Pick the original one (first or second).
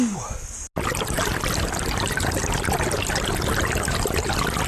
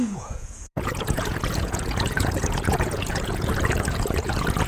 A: first